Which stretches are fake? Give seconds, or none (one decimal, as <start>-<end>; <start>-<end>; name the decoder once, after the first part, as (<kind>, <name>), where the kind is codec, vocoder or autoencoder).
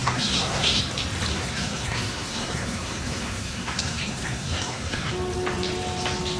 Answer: 0.0-0.8 (codec, SNAC); 1.3-5.1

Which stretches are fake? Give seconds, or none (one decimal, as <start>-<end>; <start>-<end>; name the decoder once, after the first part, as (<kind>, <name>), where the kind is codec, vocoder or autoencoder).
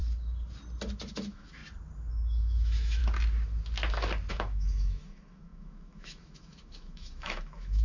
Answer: 1.1-1.6 (autoencoder, DAC-VAE); 2.1-3.0; 4.3-7.8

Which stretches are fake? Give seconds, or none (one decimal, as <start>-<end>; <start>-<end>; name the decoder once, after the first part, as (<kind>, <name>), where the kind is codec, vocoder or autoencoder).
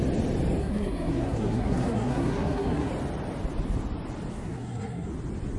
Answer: 0.6-2.9 (codec, SNAC); 4.3-5.1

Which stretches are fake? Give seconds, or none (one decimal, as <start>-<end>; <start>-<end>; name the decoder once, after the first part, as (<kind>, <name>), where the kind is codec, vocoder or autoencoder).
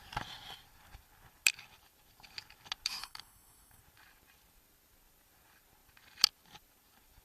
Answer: 3.0-3.8 (codec, DAC)